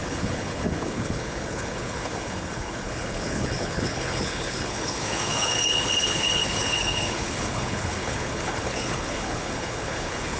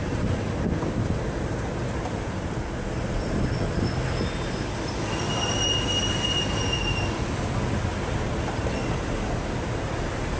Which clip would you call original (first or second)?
second